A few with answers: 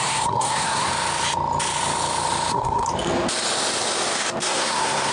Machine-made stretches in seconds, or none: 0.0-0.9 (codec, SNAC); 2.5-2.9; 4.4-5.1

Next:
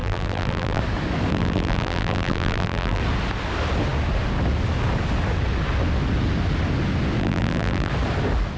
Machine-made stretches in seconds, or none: 0.0-0.8 (vocoder, BigVGAN v2); 1.3-3.0; 7.2-7.9

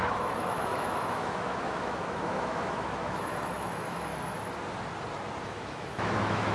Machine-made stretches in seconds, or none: 0.0-4.1 (autoencoder, DAC-VAE); 5.4-6.5

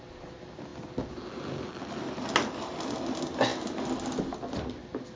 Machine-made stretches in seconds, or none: none

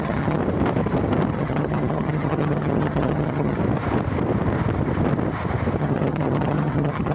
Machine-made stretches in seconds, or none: 0.0-0.4 (vocoder, HiFi-GAN); 1.3-3.6; 5.8-7.1